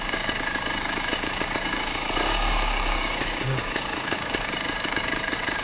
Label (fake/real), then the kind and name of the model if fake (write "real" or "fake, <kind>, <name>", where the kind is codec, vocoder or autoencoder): fake, codec, DAC